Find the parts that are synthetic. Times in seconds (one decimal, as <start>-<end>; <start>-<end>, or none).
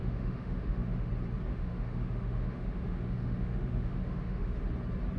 0.0-1.1; 1.5-4.6